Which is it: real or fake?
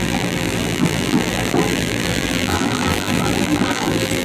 fake